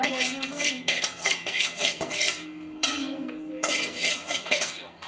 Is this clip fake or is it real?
fake